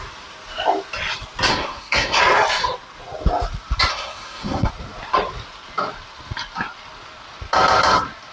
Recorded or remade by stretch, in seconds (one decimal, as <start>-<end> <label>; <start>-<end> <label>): 0.0-1.5 recorded; 1.5-2.2 remade; 2.2-3.9 recorded; 3.9-4.7 remade; 4.7-8.3 recorded